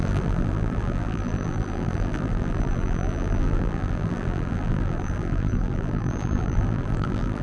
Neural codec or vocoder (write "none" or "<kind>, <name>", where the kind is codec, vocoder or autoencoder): vocoder, BigVGAN v2